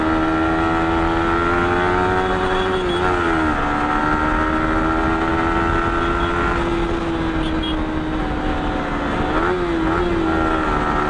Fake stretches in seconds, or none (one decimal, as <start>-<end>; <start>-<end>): none